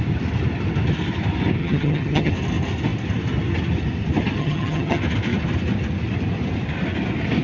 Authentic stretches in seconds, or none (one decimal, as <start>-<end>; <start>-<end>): 0.0-1.6; 2.3-4.4; 5.0-7.4